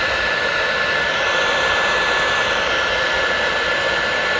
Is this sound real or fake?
real